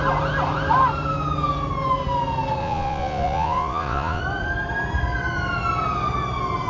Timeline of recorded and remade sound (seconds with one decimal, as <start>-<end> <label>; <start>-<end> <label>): 0.0-2.6 recorded; 2.6-4.2 remade; 4.2-6.7 recorded